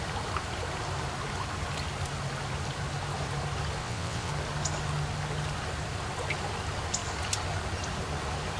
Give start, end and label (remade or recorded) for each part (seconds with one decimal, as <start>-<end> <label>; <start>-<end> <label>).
0.0-3.8 recorded; 3.8-4.3 remade; 4.3-8.6 recorded

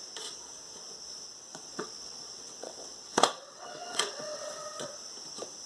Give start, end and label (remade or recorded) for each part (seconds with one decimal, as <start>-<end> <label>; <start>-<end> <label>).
0.0-1.5 recorded; 1.5-4.9 remade; 4.9-5.7 recorded

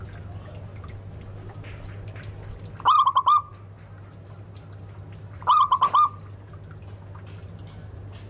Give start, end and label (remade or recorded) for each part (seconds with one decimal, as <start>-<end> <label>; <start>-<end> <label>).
0.0-8.3 recorded

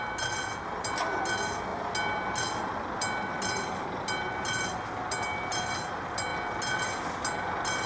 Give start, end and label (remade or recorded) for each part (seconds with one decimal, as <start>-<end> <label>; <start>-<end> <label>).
0.0-7.9 recorded